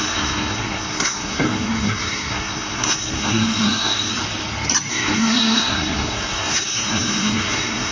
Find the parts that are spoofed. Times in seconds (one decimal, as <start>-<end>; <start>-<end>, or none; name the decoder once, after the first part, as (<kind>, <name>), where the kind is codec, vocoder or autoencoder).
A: 0.0-4.1 (codec, SNAC); 4.9-7.9